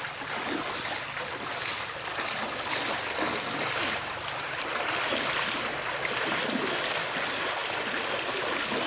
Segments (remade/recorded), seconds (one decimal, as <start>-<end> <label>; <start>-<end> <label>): 0.0-8.9 recorded